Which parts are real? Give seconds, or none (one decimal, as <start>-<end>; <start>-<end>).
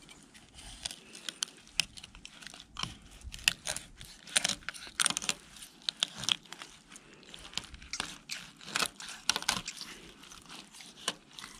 0.0-10.3